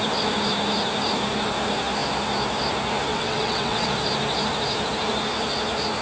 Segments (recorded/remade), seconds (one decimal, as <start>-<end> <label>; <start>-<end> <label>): 0.0-3.1 recorded; 3.1-3.9 remade; 3.9-6.0 recorded